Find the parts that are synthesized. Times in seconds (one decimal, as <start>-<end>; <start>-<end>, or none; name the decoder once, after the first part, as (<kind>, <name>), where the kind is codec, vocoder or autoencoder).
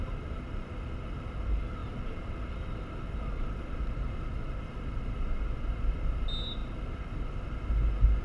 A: none